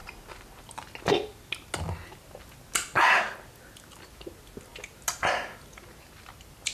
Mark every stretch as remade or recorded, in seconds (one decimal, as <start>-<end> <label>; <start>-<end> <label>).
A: 0.0-6.7 recorded